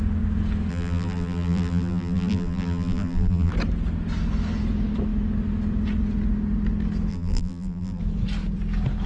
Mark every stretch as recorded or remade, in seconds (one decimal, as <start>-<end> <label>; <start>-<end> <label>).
0.0-0.7 recorded; 0.7-3.5 remade; 3.5-7.1 recorded; 7.1-8.0 remade; 8.0-9.1 recorded